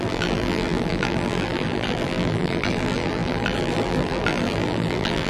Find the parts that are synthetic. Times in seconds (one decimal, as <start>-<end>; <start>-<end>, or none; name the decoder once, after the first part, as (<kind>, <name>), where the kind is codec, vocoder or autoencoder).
0.0-5.3 (vocoder, BigVGAN v2)